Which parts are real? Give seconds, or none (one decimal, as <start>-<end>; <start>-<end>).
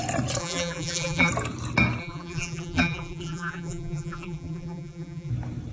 0.0-0.4; 1.3-2.0; 5.3-5.7